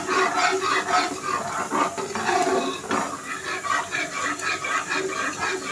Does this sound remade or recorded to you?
recorded